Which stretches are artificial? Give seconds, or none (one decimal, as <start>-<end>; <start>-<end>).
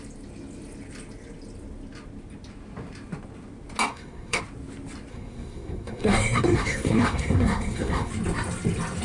3.9-4.4; 5.1-8.1